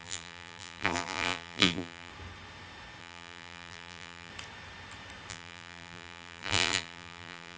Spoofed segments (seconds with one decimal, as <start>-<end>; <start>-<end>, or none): 0.0-2.1; 3.0-4.3; 5.3-7.6